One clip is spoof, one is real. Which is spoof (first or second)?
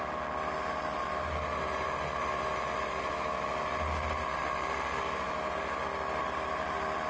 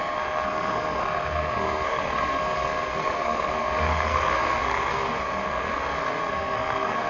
second